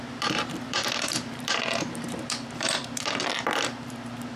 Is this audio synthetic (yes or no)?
yes